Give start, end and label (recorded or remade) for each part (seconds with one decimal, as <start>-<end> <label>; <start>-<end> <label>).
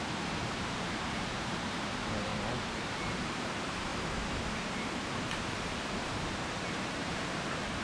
0.0-2.3 remade; 2.3-2.9 recorded; 2.9-3.9 remade; 3.9-5.4 recorded; 5.4-7.8 remade